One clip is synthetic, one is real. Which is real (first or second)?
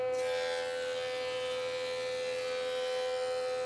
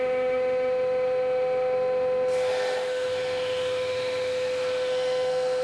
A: first